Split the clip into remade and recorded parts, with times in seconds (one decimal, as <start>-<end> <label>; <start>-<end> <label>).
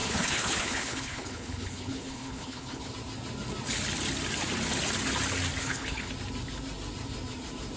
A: 0.0-2.9 remade; 2.9-5.6 recorded; 5.6-6.1 remade; 6.1-7.8 recorded